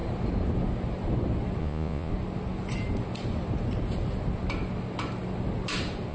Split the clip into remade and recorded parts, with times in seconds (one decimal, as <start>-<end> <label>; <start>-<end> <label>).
0.0-1.6 recorded; 1.6-2.1 remade; 2.1-6.1 recorded